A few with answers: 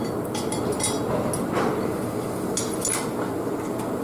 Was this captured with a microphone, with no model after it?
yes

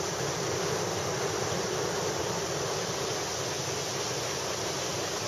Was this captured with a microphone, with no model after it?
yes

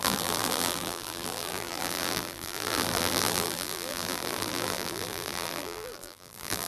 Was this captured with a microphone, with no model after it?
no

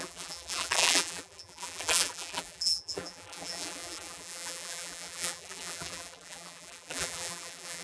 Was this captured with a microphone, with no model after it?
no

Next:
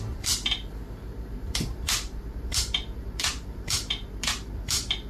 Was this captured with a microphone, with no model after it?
no